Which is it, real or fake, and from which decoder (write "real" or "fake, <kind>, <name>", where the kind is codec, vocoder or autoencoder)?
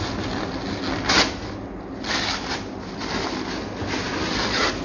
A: real